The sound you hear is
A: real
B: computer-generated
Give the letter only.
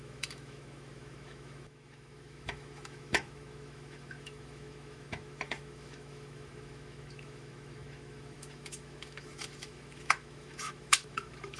B